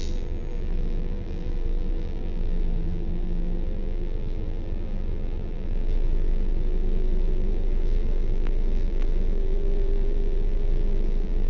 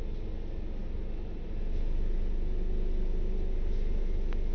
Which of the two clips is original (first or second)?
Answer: second